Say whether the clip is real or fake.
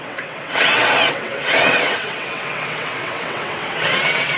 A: fake